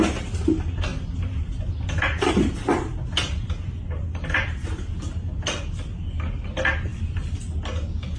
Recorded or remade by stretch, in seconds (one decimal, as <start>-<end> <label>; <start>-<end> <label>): 0.0-8.2 recorded